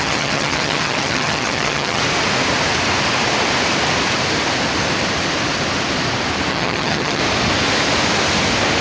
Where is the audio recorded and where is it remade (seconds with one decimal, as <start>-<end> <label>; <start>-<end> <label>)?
0.0-2.0 remade; 2.0-6.5 recorded; 6.5-7.2 remade; 7.2-8.8 recorded